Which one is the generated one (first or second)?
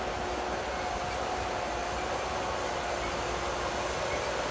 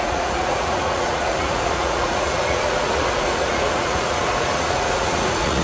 second